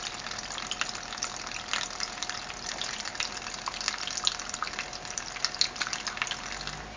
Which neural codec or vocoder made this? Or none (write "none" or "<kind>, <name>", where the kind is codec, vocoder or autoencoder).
none